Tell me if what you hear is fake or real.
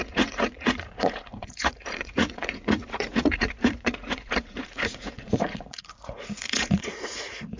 fake